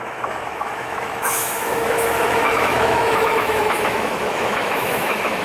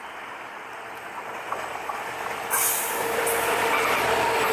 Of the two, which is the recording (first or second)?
second